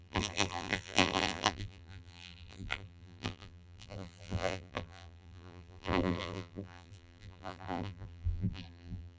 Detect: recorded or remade remade